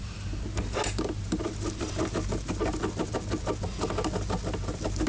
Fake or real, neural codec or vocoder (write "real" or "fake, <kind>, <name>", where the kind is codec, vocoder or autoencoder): real